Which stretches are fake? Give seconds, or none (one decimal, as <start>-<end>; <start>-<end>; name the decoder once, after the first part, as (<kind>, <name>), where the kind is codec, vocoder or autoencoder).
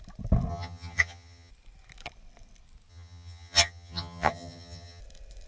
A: 0.5-1.5 (vocoder, HiFi-GAN); 2.9-5.0